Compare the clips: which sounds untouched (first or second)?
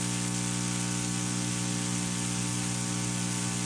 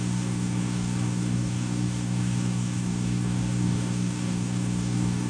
first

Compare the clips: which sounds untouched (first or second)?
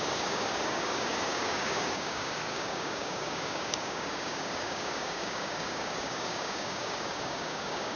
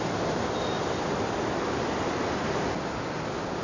second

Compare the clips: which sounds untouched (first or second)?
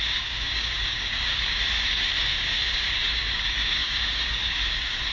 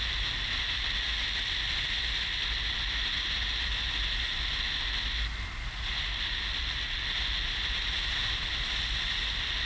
second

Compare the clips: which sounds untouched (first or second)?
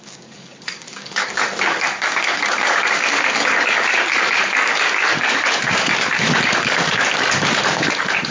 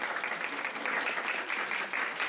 second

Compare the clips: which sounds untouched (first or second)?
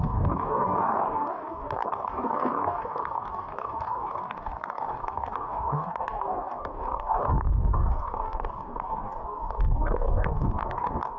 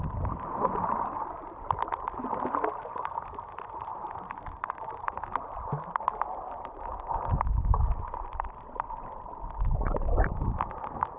second